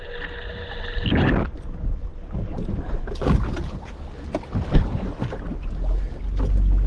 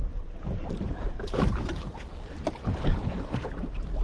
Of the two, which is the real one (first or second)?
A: first